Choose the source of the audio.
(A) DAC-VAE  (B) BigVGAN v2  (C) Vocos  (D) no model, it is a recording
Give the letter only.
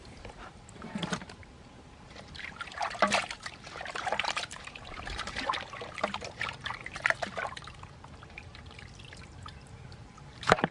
B